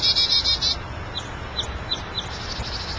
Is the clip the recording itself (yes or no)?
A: yes